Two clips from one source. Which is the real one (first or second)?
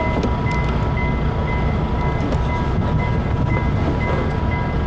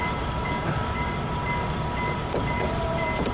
first